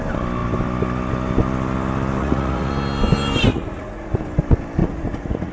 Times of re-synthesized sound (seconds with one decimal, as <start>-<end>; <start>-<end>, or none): 2.2-2.7; 3.5-4.1; 4.8-5.5